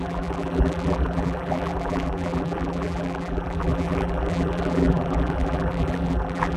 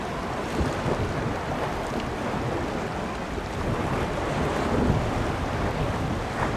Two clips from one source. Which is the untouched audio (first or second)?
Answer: second